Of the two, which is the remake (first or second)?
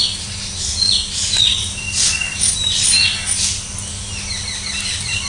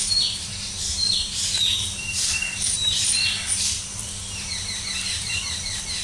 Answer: second